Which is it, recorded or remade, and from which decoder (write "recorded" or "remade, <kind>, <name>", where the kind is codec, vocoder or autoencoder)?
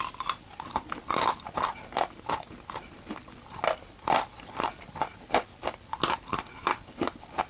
recorded